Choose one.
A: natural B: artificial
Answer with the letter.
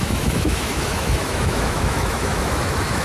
B